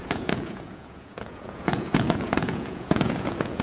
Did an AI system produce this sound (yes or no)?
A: yes